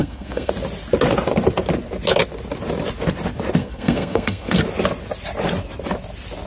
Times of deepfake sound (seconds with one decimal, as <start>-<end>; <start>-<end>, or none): 0.0-0.5; 3.6-4.6